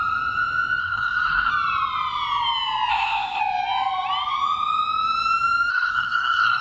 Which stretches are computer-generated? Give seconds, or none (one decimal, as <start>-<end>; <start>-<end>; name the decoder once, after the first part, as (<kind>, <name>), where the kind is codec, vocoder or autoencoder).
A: 0.8-1.5 (codec, SNAC); 2.9-3.4; 5.7-6.6